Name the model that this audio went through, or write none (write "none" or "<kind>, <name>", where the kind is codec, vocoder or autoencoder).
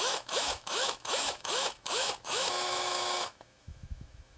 autoencoder, DAC-VAE